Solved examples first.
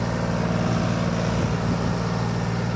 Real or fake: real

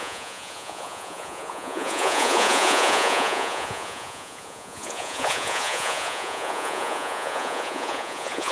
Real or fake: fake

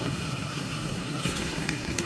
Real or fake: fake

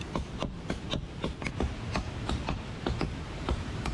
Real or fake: real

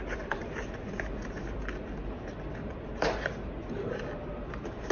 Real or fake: real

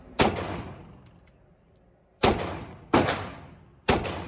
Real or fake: fake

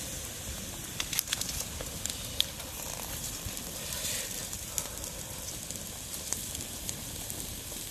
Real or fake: fake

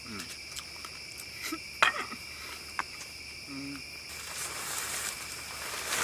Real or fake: real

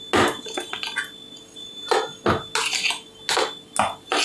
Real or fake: real